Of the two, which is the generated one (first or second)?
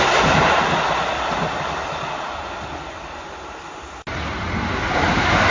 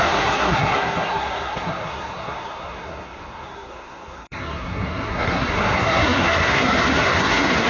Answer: second